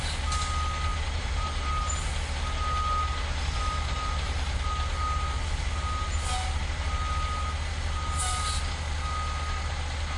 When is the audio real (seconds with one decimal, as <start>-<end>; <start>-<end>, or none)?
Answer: 0.0-0.9; 1.9-10.2